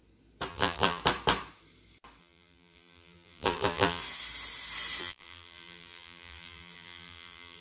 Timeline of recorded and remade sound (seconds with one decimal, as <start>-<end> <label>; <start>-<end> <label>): 0.0-0.5 recorded; 0.5-1.0 remade; 1.0-2.2 recorded; 2.2-4.0 remade; 4.0-5.0 recorded; 5.0-7.6 remade